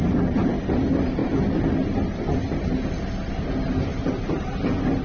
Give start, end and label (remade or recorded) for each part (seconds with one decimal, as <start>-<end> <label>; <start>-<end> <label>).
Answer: 0.0-5.0 recorded